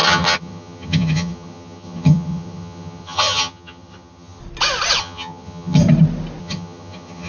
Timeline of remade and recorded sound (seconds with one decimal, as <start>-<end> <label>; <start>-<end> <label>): 0.0-4.4 remade; 4.4-5.0 recorded; 5.0-5.8 remade; 5.8-6.4 recorded; 6.4-7.3 remade